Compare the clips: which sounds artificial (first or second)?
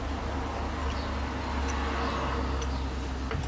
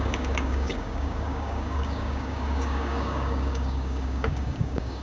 second